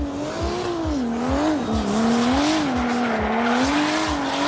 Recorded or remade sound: recorded